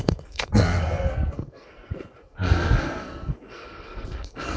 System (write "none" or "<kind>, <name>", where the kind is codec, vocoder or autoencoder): codec, SNAC